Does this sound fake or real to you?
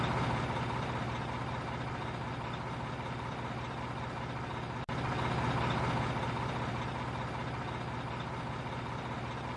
real